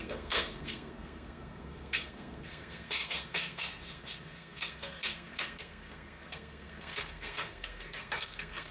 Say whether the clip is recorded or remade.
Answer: remade